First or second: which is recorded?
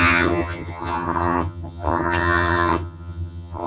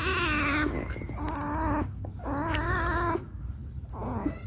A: second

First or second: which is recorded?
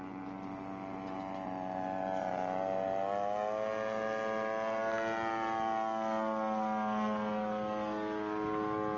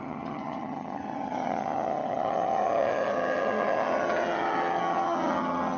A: first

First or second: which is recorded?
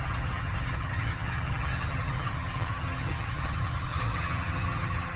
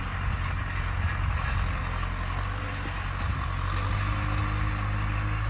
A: second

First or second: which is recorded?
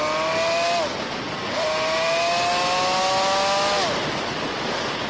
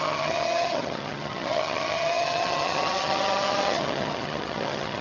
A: first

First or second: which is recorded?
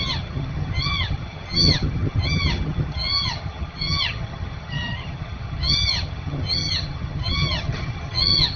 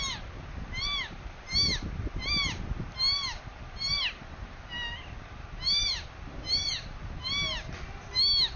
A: second